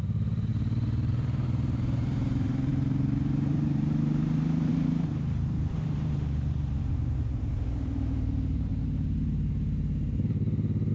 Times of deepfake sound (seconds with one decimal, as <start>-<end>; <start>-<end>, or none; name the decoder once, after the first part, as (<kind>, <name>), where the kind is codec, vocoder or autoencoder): 0.0-8.7 (vocoder, BigVGAN v2)